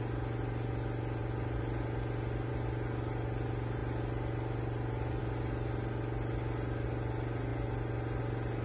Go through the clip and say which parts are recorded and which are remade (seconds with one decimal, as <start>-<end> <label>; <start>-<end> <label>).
0.0-8.6 recorded